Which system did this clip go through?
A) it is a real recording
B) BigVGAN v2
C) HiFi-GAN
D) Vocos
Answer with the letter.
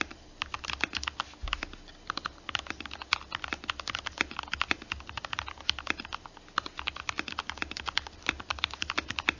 A